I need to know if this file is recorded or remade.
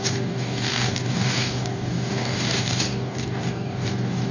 remade